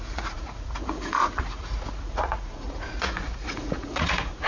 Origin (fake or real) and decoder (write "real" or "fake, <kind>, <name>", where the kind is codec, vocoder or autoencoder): fake, vocoder, Vocos